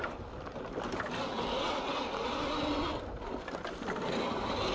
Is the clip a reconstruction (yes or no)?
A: no